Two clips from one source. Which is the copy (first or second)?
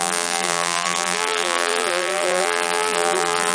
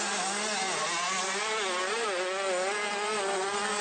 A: first